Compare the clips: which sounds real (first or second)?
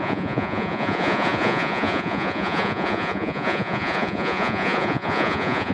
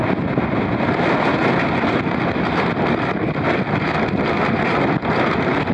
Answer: second